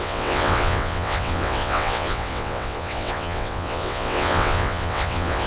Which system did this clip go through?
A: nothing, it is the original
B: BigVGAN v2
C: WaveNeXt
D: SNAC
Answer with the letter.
C